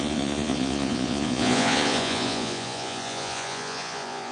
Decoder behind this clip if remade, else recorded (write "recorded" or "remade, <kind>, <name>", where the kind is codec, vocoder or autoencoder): remade, vocoder, Vocos